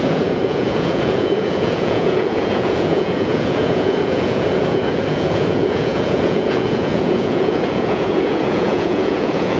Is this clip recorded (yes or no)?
no